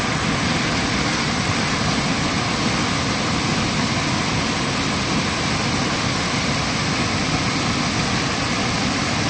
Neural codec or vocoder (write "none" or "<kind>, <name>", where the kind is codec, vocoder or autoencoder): none